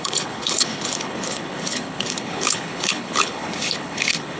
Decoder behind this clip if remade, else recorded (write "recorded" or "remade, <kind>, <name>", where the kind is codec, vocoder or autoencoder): remade, codec, HILCodec